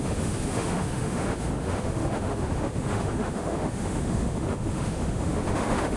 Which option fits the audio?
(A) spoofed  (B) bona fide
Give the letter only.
A